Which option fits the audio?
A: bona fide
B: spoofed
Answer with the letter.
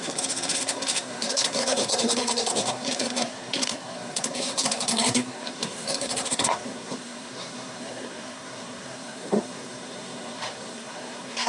B